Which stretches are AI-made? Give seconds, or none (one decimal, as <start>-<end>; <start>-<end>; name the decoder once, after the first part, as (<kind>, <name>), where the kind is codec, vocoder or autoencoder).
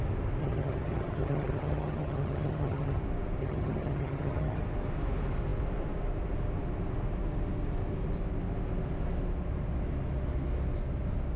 0.4-3.0 (vocoder, HiFi-GAN); 3.4-4.6